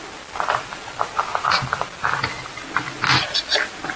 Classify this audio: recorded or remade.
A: recorded